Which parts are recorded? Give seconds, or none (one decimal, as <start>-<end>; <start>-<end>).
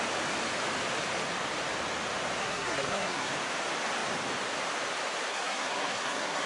0.0-2.4; 3.3-5.3